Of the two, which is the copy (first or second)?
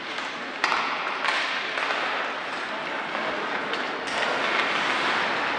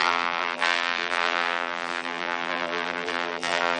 second